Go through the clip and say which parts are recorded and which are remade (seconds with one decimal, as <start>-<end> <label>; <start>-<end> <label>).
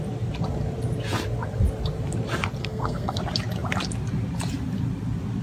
0.0-2.6 recorded; 2.6-3.2 remade; 3.2-5.4 recorded